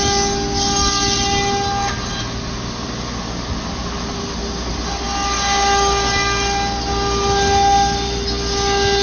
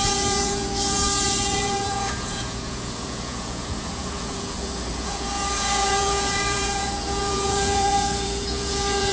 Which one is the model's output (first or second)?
second